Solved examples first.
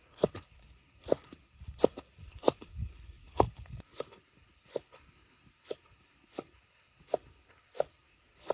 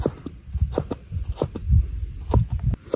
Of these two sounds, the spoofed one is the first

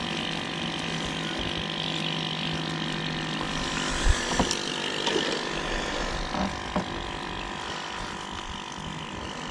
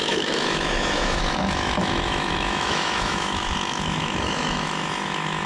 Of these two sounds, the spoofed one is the second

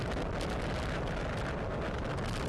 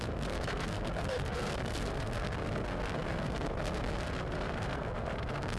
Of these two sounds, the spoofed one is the second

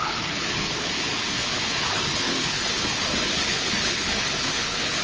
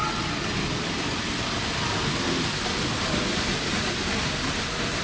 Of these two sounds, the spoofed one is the first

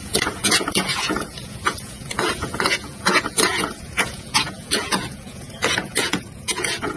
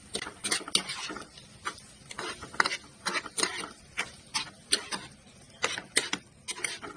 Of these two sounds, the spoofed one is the first